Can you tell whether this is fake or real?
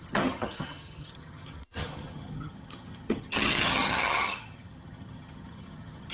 fake